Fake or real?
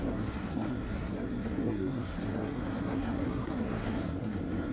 fake